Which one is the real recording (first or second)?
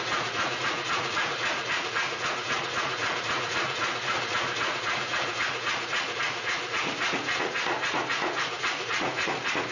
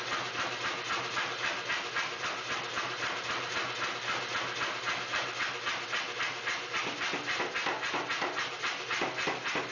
second